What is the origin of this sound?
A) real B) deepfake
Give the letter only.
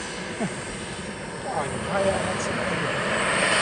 A